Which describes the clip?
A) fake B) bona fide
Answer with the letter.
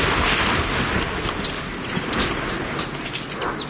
B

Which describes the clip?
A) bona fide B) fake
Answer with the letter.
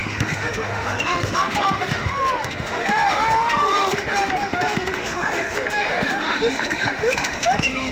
B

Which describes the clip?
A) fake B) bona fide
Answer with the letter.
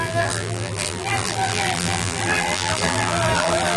A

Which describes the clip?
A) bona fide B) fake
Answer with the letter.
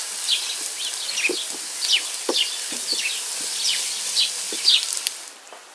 A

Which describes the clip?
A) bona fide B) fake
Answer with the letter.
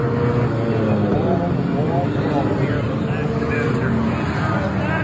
A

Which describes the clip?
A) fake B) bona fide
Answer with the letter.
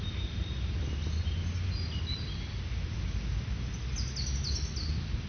B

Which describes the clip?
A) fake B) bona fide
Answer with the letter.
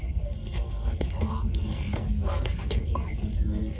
A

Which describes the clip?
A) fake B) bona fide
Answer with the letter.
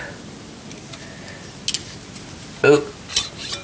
B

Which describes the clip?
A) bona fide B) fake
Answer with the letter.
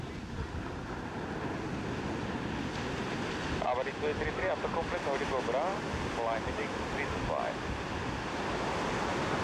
A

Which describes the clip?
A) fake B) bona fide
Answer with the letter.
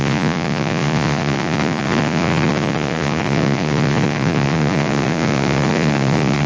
A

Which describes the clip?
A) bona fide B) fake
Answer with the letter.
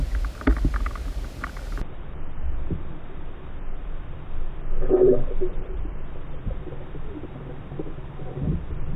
A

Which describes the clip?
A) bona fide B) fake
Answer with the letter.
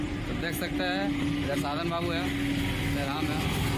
A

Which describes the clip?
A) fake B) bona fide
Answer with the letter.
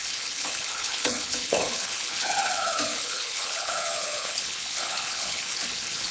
A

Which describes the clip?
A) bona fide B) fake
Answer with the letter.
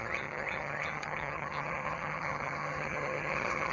B